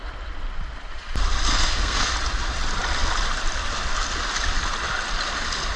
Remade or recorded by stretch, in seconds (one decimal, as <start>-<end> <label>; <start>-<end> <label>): 0.0-1.5 recorded; 1.5-2.1 remade; 2.1-5.8 recorded